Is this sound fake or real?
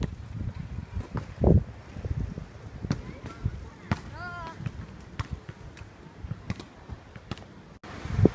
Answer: real